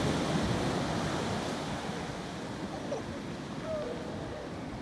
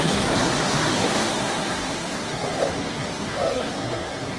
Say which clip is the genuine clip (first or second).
first